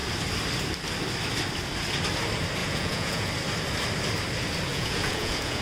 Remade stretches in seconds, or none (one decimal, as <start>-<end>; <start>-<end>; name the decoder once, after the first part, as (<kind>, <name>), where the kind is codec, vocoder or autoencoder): 2.6-3.3 (vocoder, Vocos); 4.7-5.6